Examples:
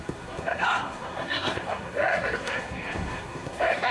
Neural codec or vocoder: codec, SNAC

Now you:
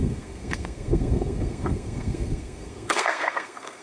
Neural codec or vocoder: codec, SNAC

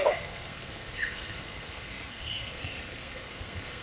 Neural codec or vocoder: codec, SNAC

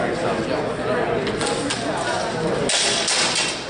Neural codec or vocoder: none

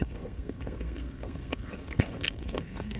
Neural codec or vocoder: codec, SNAC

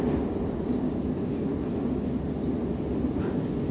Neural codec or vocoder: none